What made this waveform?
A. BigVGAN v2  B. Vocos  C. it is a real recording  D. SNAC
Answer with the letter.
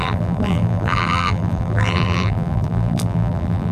A